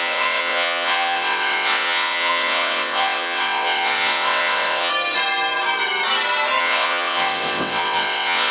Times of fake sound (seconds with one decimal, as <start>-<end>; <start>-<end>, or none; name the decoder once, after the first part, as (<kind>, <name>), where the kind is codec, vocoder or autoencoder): 0.0-4.9 (vocoder, WaveNeXt); 6.6-8.5